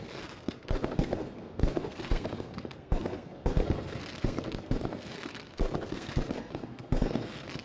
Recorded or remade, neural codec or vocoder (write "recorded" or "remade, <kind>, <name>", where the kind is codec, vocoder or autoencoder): remade, codec, SNAC